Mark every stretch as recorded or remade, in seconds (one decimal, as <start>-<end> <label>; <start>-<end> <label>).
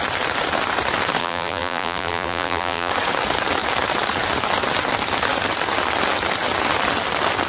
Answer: 0.0-1.2 recorded; 1.2-2.9 remade; 2.9-7.5 recorded